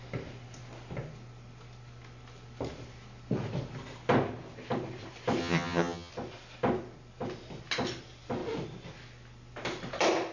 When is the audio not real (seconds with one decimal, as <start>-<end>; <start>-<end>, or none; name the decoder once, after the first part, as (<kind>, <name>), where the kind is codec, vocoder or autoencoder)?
5.4-6.1 (vocoder, HiFi-GAN)